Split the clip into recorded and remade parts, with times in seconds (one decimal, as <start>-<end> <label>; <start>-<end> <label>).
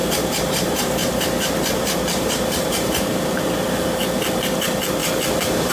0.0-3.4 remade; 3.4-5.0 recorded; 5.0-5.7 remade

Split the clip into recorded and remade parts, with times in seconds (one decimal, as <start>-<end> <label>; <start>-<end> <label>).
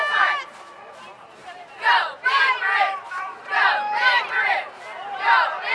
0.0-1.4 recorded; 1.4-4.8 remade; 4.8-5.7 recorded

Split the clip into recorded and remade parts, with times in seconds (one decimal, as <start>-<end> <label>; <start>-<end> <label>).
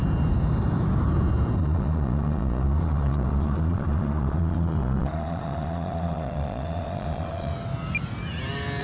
0.0-1.6 recorded; 1.6-7.5 remade; 7.5-8.8 recorded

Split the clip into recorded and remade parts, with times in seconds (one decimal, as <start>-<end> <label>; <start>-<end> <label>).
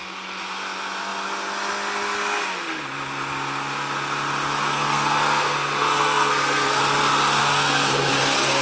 0.0-4.6 recorded; 4.6-6.8 remade; 6.8-7.4 recorded; 7.4-8.1 remade; 8.1-8.6 recorded